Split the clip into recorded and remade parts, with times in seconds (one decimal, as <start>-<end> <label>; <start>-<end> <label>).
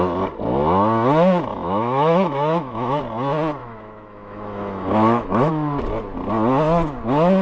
0.0-1.5 recorded; 1.5-3.0 remade; 3.0-3.6 recorded; 3.6-5.5 remade; 5.5-7.4 recorded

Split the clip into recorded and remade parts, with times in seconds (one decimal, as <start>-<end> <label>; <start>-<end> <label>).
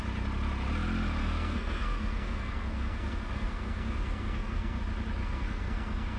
0.0-1.2 recorded; 1.2-4.8 remade; 4.8-5.2 recorded; 5.2-6.2 remade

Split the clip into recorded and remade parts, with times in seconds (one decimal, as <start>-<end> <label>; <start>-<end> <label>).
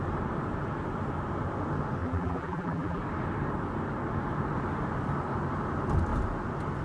0.0-2.0 recorded; 2.0-3.0 remade; 3.0-6.8 recorded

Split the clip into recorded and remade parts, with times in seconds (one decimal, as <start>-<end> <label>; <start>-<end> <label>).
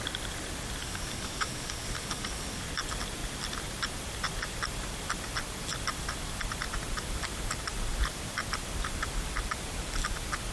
0.0-0.8 recorded; 0.8-2.6 remade; 2.6-10.5 recorded